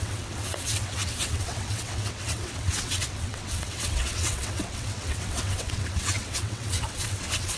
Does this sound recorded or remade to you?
remade